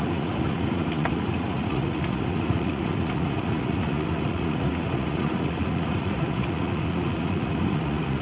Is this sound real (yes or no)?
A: no